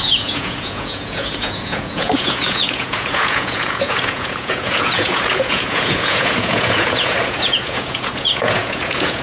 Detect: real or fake fake